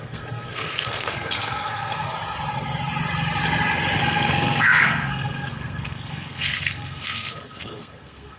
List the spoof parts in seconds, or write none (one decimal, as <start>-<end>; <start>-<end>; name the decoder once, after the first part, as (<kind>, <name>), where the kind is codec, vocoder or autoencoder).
0.0-2.1 (codec, SNAC); 4.0-8.4